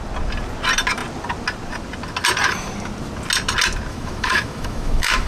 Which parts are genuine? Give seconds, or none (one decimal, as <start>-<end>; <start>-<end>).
0.0-3.9